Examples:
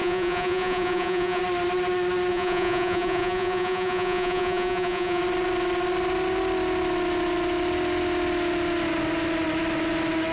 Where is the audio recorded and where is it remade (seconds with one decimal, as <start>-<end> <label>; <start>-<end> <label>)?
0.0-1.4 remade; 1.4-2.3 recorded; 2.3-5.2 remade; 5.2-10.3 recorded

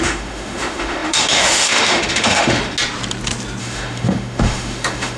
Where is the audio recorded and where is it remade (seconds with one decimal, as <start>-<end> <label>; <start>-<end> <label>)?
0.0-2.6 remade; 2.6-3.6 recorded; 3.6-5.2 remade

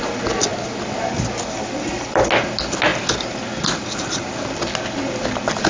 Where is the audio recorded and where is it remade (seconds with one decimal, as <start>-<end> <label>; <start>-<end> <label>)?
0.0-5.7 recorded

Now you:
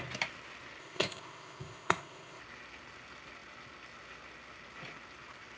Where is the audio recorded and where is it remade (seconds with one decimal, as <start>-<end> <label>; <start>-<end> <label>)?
0.0-0.8 recorded; 0.8-2.4 remade; 2.4-5.6 recorded

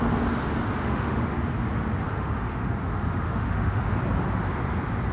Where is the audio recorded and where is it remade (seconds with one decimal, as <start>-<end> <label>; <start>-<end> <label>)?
0.0-0.8 recorded; 0.8-1.3 remade; 1.3-2.1 recorded; 2.1-3.9 remade; 3.9-5.1 recorded

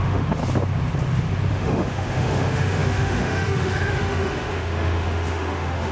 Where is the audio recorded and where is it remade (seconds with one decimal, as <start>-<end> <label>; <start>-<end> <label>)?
0.0-0.4 remade; 0.4-1.5 recorded; 1.5-5.9 remade

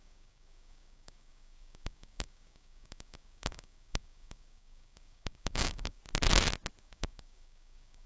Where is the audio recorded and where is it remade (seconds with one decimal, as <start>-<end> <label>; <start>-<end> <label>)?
0.0-6.0 remade; 6.0-6.8 recorded; 6.8-8.1 remade

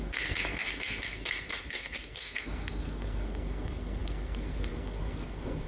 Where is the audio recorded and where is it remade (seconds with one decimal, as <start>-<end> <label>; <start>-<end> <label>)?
0.0-5.7 remade